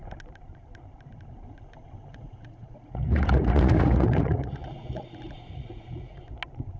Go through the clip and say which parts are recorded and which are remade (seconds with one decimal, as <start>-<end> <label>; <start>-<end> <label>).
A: 0.0-2.1 recorded; 2.1-6.2 remade; 6.2-6.8 recorded